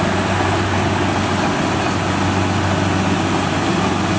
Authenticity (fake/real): real